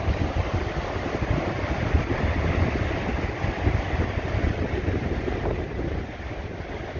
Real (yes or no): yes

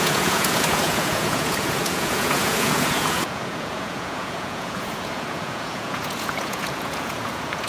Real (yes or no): no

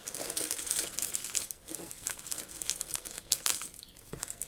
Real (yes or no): no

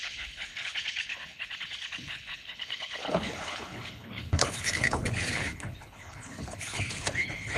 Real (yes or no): no